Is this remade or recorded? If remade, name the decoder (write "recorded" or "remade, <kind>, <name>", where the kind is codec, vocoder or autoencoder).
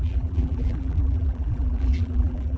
remade, vocoder, BigVGAN v2